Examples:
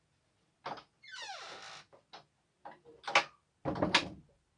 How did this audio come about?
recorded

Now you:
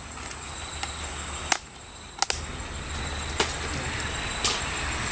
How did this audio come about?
recorded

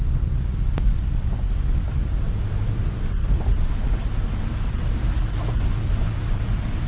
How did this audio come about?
recorded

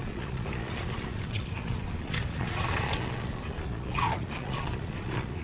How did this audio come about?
remade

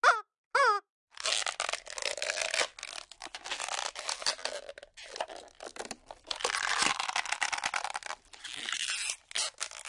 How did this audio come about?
recorded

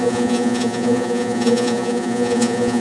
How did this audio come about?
remade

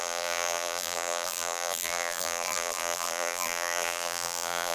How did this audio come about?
remade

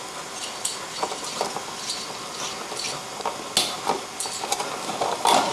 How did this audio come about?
recorded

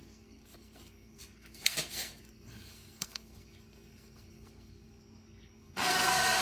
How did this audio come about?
remade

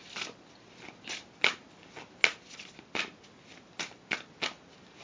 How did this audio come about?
recorded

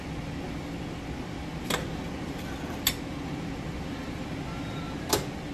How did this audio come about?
recorded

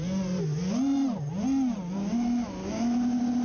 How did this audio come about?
recorded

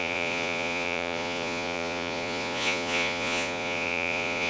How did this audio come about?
remade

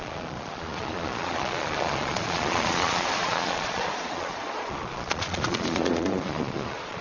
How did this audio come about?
remade